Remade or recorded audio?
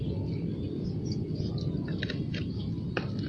recorded